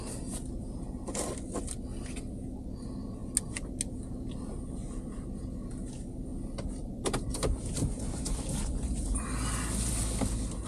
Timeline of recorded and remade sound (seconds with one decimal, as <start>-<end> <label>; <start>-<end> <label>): 0.0-6.3 recorded; 6.3-8.7 remade; 8.7-10.7 recorded